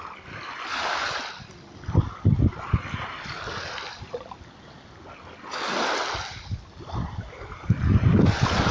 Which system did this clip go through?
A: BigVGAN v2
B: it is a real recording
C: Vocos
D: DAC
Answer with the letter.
B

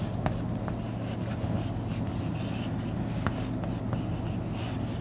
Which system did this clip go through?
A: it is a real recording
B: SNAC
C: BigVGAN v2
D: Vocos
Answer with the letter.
A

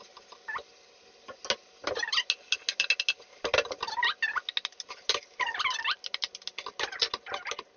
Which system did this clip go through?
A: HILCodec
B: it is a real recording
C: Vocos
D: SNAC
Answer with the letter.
B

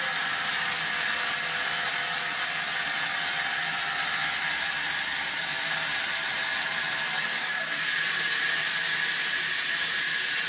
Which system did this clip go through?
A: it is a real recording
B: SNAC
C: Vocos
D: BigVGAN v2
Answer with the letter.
A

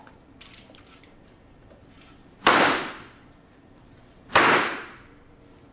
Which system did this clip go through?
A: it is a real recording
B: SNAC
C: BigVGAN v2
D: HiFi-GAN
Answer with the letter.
C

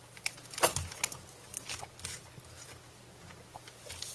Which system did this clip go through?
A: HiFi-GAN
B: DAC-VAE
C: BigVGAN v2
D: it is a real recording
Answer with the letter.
D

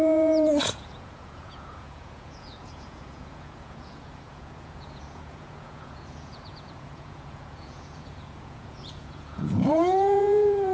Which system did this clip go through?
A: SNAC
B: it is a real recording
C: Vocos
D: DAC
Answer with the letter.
C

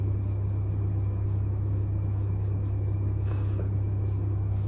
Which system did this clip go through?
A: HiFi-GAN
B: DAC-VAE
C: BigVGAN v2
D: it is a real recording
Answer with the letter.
B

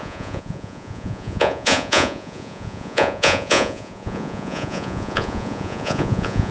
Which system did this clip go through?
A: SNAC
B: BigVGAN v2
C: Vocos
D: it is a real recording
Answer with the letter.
C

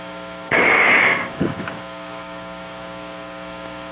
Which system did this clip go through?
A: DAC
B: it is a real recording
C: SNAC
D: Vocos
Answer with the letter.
A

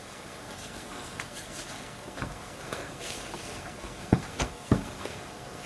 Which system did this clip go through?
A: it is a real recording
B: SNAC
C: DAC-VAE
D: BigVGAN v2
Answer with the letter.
B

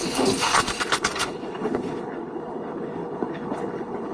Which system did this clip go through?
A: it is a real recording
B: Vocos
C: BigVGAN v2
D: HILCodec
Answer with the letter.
D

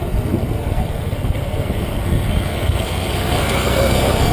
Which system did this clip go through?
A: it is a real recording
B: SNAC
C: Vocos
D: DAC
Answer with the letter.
B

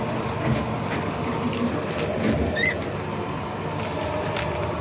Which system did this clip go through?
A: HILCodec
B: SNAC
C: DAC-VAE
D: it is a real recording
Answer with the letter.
D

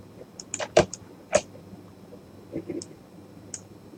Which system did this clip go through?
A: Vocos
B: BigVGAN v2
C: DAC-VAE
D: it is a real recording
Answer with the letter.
B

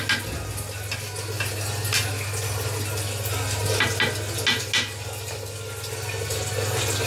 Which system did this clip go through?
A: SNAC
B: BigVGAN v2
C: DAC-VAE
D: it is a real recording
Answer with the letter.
D